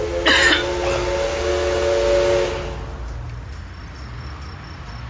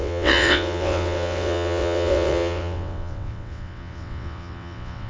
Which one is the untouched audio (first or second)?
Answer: first